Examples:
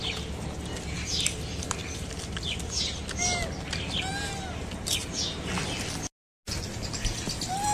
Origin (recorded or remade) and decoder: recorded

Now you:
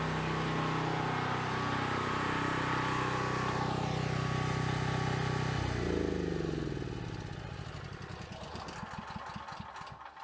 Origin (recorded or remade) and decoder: recorded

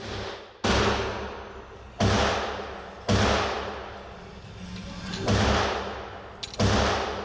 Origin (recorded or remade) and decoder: recorded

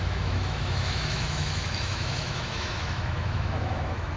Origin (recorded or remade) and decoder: remade, autoencoder, DAC-VAE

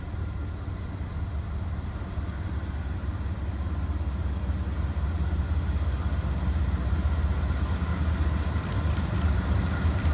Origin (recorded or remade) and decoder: recorded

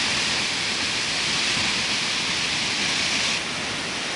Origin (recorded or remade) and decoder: recorded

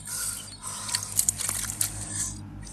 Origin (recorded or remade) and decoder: recorded